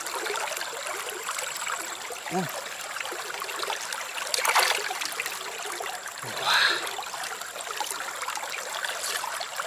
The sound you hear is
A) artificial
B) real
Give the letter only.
B